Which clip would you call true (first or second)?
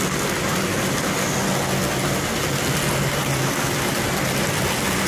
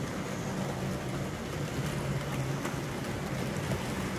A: first